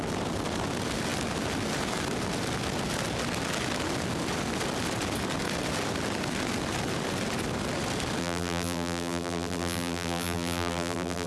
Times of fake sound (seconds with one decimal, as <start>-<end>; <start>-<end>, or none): 8.2-11.3